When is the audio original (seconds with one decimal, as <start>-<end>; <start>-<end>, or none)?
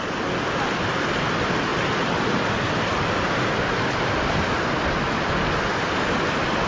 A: 0.0-6.7